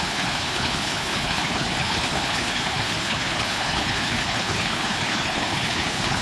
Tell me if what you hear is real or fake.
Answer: fake